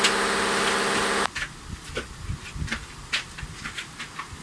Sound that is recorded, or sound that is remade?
recorded